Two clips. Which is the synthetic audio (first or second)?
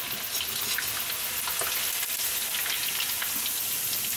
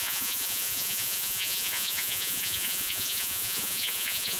second